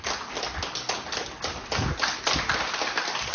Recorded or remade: recorded